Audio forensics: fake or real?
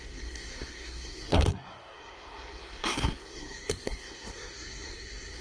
fake